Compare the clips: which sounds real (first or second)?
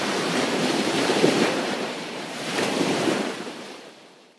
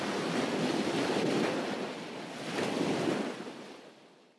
second